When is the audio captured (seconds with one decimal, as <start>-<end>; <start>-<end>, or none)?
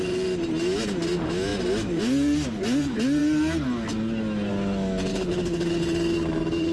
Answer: 0.0-5.1; 5.8-6.7